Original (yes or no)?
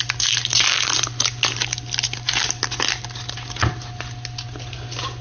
yes